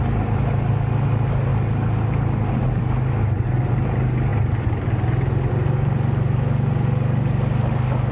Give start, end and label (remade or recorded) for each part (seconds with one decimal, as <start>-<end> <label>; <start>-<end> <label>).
0.0-8.1 recorded